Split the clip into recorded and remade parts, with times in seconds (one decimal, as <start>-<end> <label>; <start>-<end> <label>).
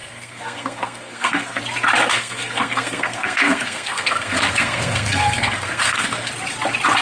0.0-1.6 remade; 1.6-2.1 recorded; 2.1-6.3 remade; 6.3-7.0 recorded